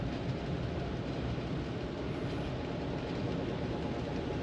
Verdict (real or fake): real